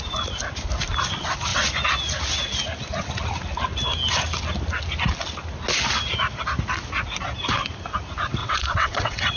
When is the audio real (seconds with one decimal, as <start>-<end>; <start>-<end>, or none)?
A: 0.0-8.4